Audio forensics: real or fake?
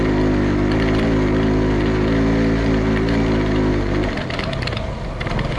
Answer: real